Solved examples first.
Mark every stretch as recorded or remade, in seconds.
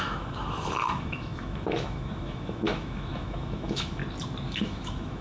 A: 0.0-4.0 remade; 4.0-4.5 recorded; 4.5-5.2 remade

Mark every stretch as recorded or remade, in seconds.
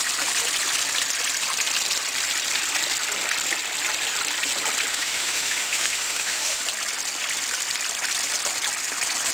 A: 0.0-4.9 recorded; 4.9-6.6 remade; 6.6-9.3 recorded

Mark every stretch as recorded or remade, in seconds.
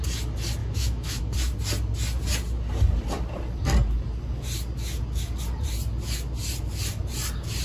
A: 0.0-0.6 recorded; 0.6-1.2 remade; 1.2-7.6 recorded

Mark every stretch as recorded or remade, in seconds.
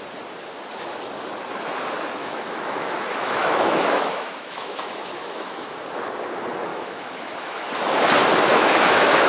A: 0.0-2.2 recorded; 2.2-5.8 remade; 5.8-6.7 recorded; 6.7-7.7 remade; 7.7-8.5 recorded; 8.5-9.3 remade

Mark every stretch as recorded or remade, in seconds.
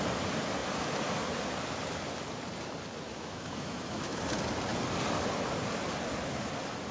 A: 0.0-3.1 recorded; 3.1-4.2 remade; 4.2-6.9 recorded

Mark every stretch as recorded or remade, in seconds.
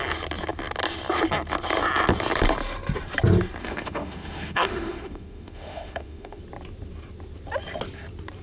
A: 0.0-3.6 recorded; 3.6-6.4 remade; 6.4-8.4 recorded